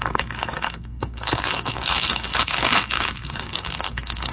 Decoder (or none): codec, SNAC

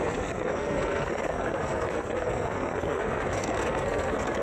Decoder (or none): codec, SNAC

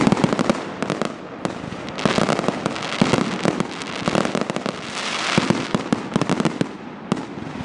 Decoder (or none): none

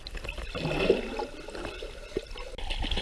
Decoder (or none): none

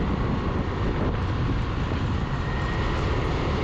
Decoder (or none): none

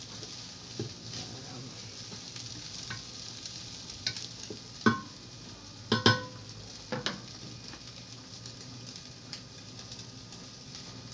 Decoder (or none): none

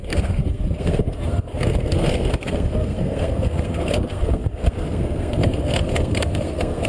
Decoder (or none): codec, SNAC